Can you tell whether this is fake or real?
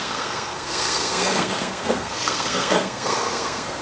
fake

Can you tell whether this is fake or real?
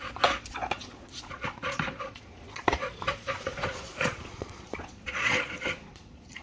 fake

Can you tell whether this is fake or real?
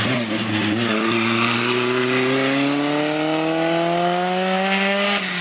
real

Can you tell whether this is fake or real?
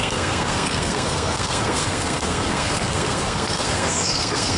fake